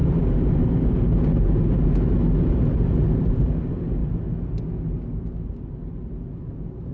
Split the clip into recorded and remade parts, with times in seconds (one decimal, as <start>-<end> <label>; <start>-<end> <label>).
0.0-6.9 recorded